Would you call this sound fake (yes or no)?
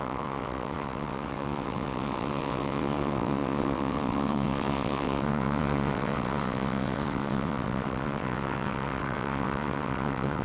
yes